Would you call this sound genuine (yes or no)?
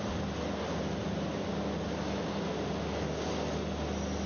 yes